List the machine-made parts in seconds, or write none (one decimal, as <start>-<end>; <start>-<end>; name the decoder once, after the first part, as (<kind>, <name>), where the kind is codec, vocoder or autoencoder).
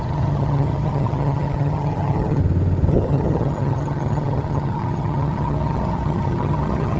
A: 0.0-2.4 (vocoder, HiFi-GAN); 2.9-7.0